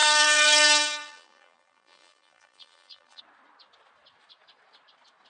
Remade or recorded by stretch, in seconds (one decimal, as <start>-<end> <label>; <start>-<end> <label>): 0.0-3.2 remade; 3.2-5.3 recorded